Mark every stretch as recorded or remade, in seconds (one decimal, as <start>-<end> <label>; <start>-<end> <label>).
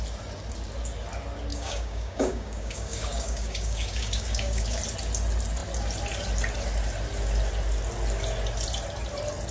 0.0-1.5 recorded; 1.5-4.8 remade; 4.8-9.5 recorded